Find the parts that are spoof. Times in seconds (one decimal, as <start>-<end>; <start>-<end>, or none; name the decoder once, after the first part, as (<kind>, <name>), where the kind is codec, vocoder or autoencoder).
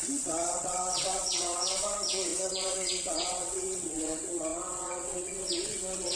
0.0-6.2 (vocoder, WaveNeXt)